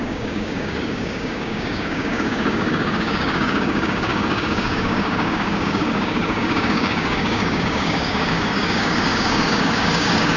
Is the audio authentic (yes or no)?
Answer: no